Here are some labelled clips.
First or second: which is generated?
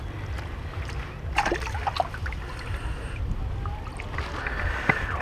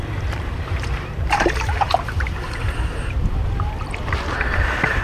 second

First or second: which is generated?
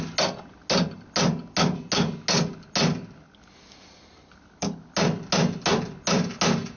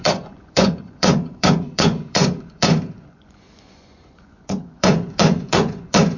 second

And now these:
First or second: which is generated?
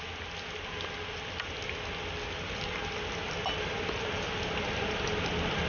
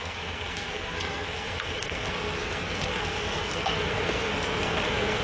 second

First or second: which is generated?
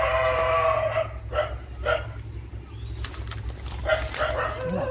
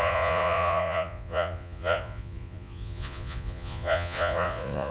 second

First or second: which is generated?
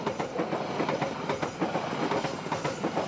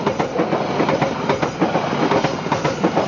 first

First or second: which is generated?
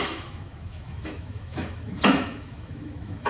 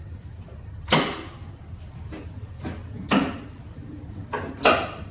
first